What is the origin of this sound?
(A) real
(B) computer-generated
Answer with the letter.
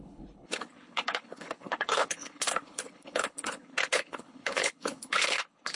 B